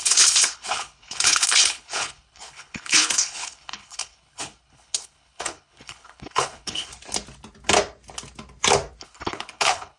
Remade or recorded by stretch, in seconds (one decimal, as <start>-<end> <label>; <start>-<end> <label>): 0.0-6.9 remade; 6.9-9.0 recorded; 9.0-10.0 remade